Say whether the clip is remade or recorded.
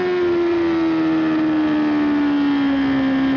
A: recorded